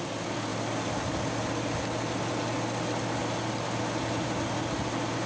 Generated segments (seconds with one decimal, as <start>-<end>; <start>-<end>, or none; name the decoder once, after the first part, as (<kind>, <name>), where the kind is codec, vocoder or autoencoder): none